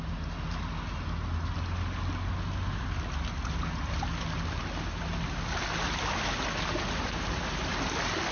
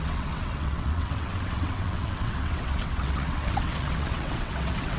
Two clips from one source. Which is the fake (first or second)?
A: second